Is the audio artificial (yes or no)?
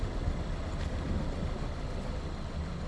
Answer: no